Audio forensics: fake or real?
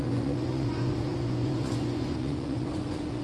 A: fake